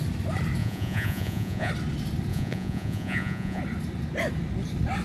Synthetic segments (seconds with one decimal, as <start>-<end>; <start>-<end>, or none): 0.6-1.7; 2.3-3.6

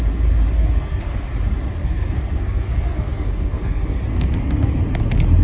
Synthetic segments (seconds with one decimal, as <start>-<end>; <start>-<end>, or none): 0.5-1.3; 1.8-4.8

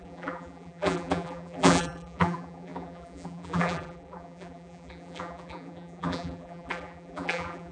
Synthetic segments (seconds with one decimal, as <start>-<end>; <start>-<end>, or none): 0.0-7.7

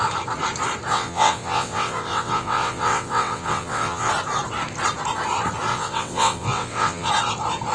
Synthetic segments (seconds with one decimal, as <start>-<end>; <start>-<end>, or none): 0.9-4.1; 5.7-7.1

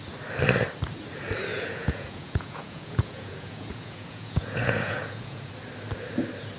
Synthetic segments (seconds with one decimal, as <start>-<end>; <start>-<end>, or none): 1.5-5.5

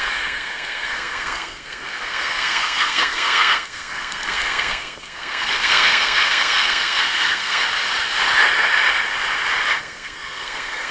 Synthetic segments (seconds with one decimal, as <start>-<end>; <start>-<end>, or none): 0.0-7.6; 9.8-10.9

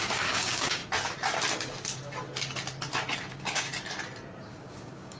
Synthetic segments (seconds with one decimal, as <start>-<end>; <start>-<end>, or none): 0.0-0.8; 3.3-3.7; 4.4-5.2